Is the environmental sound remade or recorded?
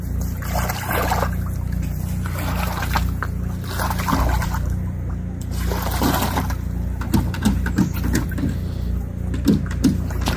recorded